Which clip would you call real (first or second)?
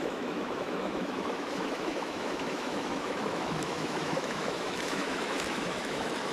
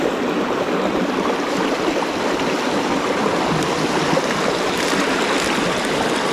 second